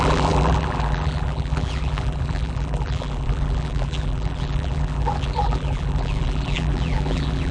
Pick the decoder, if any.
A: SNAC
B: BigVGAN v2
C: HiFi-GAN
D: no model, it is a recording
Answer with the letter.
B